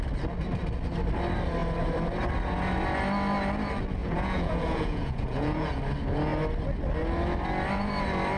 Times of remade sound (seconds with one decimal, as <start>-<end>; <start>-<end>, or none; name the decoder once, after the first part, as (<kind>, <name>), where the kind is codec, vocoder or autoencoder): 4.0-5.8 (vocoder, Vocos)